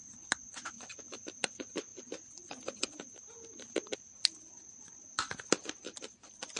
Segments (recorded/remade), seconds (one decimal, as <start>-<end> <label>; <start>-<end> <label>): 0.0-6.6 recorded